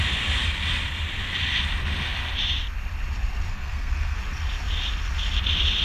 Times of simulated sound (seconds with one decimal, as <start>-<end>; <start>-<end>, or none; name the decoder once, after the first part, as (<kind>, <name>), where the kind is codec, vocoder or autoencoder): 3.5-4.2 (codec, SNAC)